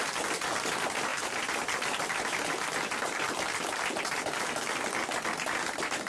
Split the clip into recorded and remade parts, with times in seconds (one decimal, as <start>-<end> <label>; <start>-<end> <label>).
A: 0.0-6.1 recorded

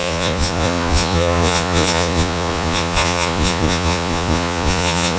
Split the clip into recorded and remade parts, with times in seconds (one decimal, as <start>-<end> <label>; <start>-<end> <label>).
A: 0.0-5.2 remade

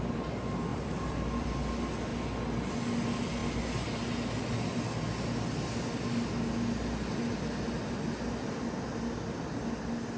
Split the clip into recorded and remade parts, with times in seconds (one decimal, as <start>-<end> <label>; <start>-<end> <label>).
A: 0.0-0.7 recorded; 0.7-1.5 remade; 1.5-10.2 recorded

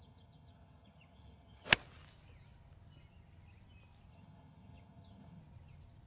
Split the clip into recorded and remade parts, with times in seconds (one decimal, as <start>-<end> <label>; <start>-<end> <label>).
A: 0.0-1.7 remade; 1.7-4.1 recorded; 4.1-5.4 remade; 5.4-6.1 recorded

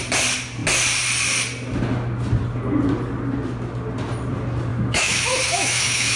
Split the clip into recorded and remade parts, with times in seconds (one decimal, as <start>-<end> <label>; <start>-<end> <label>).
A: 0.0-4.7 recorded; 4.7-6.2 remade

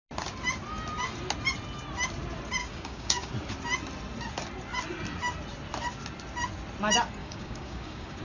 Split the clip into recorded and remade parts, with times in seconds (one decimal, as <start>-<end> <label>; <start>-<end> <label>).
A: 0.0-2.6 recorded; 2.6-3.3 remade; 3.3-7.2 recorded; 7.2-8.2 remade